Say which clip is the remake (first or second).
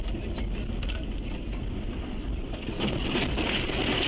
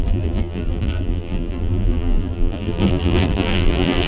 second